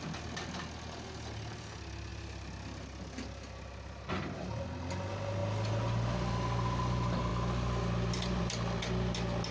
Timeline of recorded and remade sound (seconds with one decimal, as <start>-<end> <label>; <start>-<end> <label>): 0.0-9.5 recorded